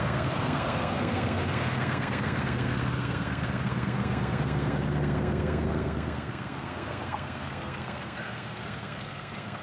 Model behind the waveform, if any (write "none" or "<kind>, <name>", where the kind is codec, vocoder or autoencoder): codec, SNAC